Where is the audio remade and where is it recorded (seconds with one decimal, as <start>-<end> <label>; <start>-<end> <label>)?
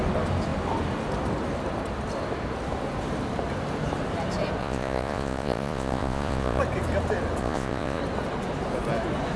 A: 0.0-4.6 recorded; 4.6-6.6 remade; 6.6-7.4 recorded; 7.4-8.0 remade; 8.0-9.4 recorded